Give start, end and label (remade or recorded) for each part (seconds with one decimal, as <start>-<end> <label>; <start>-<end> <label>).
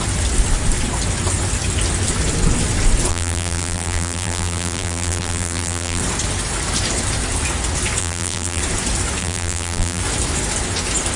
0.0-3.1 recorded; 3.1-6.0 remade; 6.0-8.0 recorded; 8.0-8.6 remade; 8.6-9.2 recorded; 9.2-10.0 remade; 10.0-11.2 recorded